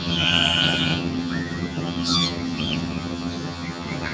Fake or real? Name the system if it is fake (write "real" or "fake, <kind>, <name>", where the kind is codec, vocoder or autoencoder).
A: fake, vocoder, HiFi-GAN